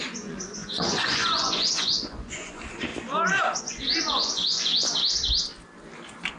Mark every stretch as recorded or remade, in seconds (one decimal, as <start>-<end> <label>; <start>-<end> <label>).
0.0-2.9 remade; 2.9-3.6 recorded; 3.6-4.7 remade; 4.7-6.4 recorded